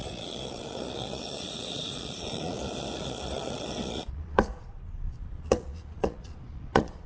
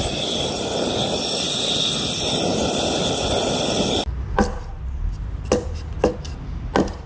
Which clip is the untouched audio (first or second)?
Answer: second